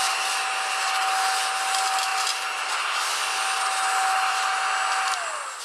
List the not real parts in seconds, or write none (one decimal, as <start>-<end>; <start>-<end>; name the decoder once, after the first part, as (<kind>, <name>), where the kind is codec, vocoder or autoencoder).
none